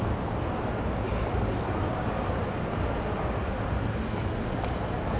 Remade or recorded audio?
recorded